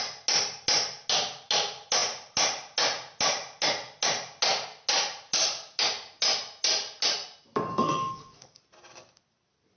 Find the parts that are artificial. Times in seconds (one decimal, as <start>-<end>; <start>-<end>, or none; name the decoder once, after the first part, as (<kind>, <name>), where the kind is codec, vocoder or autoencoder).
7.8-8.6 (codec, SNAC)